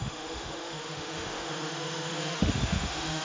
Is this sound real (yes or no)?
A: no